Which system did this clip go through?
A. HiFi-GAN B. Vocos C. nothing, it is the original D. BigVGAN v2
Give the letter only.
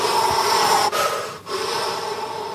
C